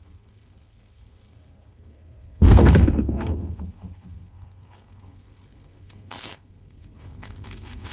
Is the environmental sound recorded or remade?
remade